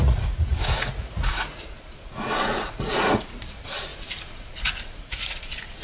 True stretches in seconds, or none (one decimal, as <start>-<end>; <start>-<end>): none